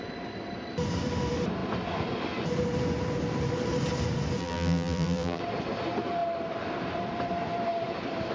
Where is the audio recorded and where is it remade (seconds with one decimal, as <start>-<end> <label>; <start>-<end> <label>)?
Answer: 0.0-4.4 recorded; 4.4-5.4 remade; 5.4-8.3 recorded

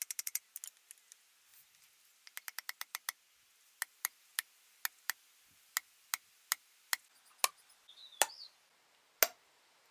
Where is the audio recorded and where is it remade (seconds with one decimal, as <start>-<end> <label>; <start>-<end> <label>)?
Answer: 0.0-9.9 recorded